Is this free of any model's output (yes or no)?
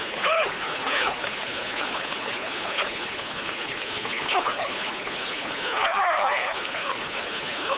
no